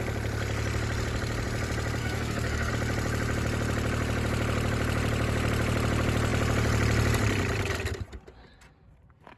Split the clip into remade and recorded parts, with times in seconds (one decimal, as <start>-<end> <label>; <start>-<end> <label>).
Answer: 0.0-2.0 recorded; 2.0-2.7 remade; 2.7-9.4 recorded